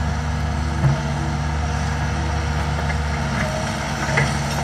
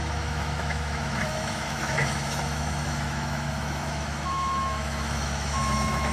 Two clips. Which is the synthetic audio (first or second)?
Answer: second